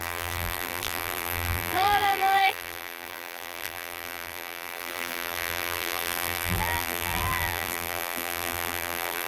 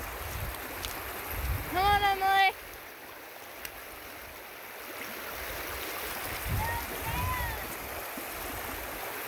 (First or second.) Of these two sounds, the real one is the second